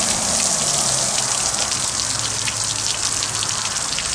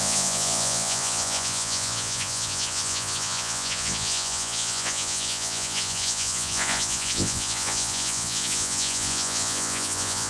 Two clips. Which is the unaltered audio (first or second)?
first